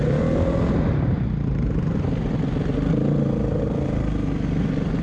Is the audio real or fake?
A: real